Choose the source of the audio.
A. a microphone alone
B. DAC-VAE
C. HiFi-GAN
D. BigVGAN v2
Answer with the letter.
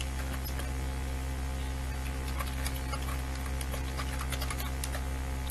A